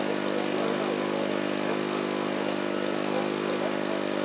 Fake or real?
real